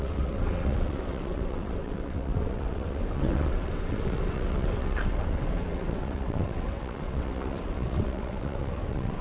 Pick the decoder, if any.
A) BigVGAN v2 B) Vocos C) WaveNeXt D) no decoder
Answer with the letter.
C